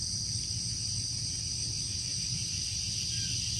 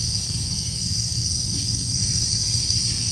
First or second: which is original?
first